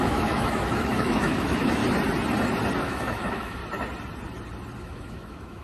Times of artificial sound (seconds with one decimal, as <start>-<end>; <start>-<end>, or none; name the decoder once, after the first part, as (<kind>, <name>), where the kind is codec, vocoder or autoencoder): 0.0-1.8 (autoencoder, DAC-VAE); 2.8-3.6; 4.8-5.6